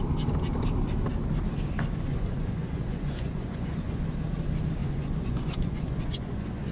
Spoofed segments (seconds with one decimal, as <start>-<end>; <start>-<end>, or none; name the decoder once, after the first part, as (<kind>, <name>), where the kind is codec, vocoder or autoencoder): 2.1-4.0 (vocoder, Vocos); 4.8-6.7